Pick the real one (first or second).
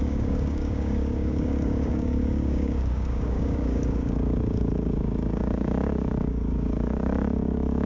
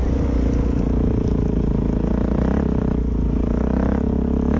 second